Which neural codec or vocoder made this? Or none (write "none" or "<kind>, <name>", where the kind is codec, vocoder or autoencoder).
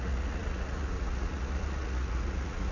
vocoder, Vocos